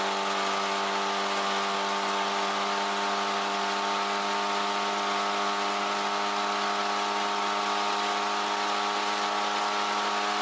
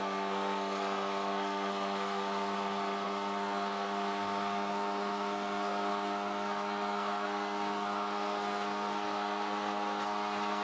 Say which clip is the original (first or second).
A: first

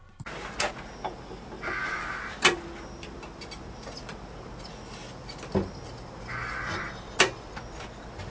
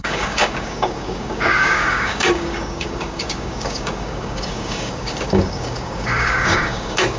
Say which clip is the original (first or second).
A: first